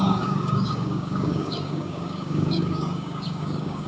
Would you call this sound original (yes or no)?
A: no